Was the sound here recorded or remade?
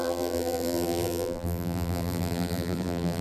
remade